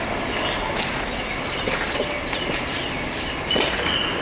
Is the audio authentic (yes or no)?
yes